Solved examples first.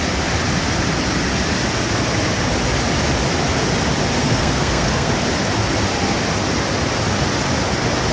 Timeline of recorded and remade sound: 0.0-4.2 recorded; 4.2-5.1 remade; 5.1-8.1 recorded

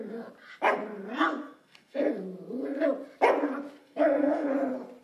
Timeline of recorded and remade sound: 0.0-1.4 recorded; 1.4-2.1 remade; 2.1-3.8 recorded; 3.8-4.5 remade; 4.5-5.0 recorded

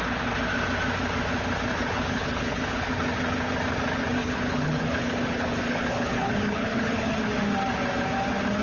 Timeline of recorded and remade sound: 0.0-1.7 recorded; 1.7-2.9 remade; 2.9-4.2 recorded; 4.2-7.2 remade; 7.2-8.6 recorded

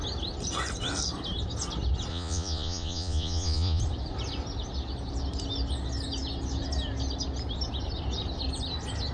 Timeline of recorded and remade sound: 0.0-2.1 recorded; 2.1-3.8 remade; 3.8-9.1 recorded

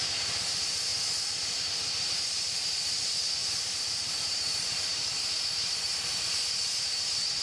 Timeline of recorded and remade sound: 0.0-3.4 recorded; 3.4-6.1 remade; 6.1-7.4 recorded